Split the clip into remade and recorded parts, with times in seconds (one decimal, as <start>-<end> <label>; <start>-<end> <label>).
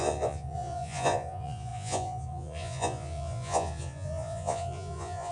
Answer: 0.0-5.3 remade